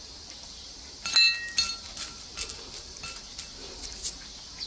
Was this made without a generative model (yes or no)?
yes